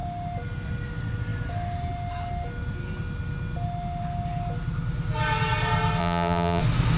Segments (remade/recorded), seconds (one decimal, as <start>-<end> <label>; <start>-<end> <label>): 0.0-6.0 recorded; 6.0-6.6 remade; 6.6-7.0 recorded